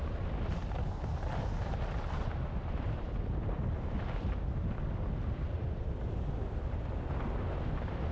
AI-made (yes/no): no